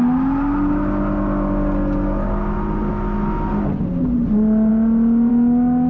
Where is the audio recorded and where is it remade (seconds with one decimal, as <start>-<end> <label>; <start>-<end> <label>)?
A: 0.0-5.9 recorded